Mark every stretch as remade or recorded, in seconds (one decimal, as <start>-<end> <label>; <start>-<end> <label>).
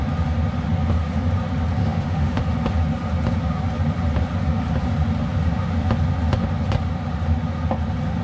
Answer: 0.0-1.8 recorded; 1.8-2.4 remade; 2.4-8.2 recorded